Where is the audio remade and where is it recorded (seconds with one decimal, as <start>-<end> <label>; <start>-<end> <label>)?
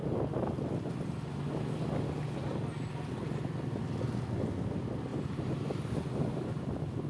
0.0-5.1 recorded; 5.1-6.6 remade; 6.6-7.1 recorded